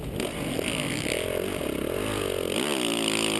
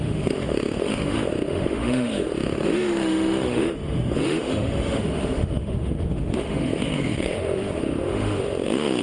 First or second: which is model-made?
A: second